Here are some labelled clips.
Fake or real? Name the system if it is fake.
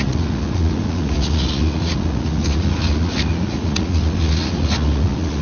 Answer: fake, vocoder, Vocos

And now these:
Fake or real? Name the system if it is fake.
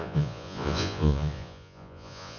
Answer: fake, vocoder, Vocos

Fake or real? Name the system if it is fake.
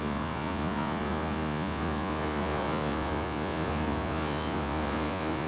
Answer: fake, vocoder, Vocos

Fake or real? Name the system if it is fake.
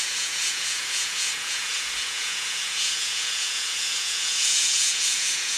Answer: fake, vocoder, Vocos